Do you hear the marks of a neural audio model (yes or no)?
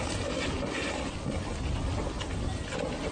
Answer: no